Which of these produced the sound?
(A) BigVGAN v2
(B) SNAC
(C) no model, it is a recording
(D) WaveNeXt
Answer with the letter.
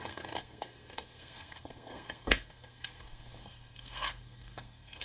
B